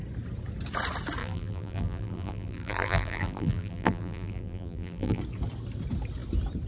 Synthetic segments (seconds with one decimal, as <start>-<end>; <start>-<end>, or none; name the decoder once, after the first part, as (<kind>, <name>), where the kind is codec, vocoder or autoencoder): 1.2-5.2 (vocoder, BigVGAN v2)